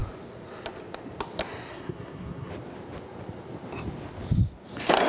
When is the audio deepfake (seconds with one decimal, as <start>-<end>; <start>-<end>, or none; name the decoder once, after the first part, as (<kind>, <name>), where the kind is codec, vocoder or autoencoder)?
1.7-2.5 (codec, SNAC)